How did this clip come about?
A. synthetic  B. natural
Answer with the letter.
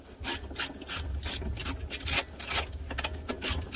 B